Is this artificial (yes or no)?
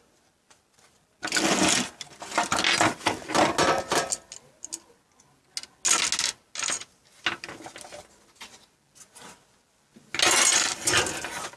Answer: no